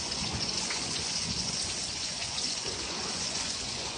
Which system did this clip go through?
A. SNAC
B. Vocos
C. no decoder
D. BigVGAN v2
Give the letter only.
B